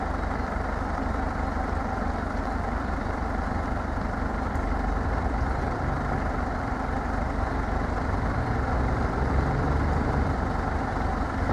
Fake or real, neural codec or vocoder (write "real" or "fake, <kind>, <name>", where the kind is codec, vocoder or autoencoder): fake, vocoder, BigVGAN v2